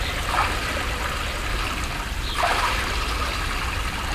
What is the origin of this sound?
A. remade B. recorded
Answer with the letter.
B